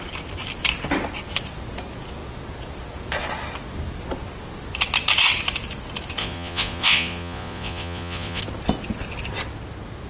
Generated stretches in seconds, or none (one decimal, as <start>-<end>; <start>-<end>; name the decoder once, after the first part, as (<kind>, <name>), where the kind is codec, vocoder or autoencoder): 6.2-8.4 (vocoder, Vocos)